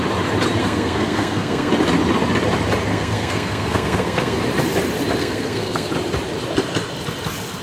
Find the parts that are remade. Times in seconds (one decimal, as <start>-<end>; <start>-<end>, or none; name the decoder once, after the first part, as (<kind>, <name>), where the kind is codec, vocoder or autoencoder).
0.6-1.7 (codec, SNAC); 2.9-4.4; 5.2-5.9